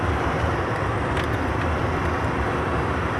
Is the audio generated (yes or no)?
no